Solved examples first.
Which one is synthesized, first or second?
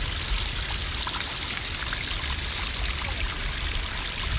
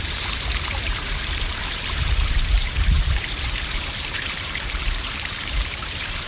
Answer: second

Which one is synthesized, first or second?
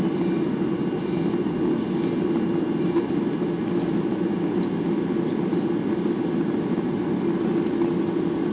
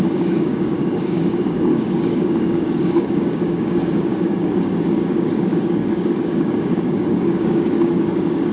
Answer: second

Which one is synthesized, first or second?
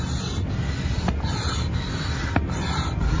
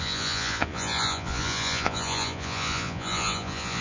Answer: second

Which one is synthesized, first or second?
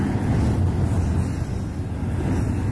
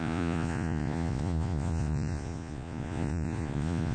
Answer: second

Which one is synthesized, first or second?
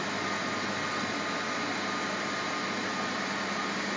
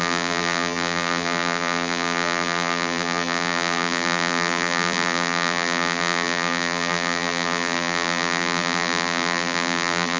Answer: second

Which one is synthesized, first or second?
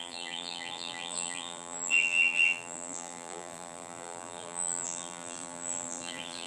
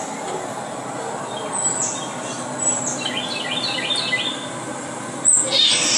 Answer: first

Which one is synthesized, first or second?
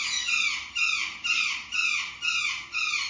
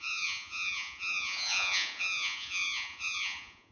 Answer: second